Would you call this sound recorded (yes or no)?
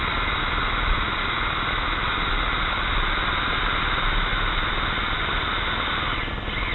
yes